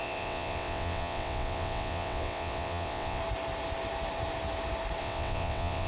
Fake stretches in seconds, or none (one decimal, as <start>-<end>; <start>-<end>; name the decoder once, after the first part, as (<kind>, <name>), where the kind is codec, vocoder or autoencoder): 0.0-3.2 (vocoder, WaveNeXt); 5.0-5.9